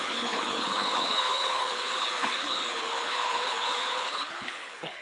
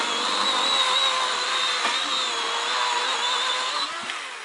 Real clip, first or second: second